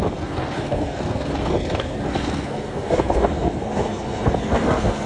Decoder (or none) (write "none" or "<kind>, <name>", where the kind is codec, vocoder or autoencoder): codec, SNAC